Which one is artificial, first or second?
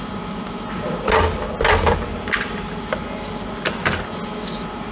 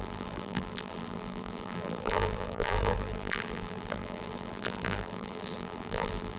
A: second